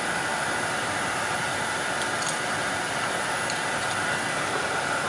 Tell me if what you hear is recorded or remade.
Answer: recorded